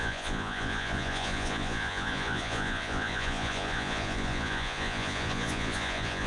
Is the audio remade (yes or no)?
yes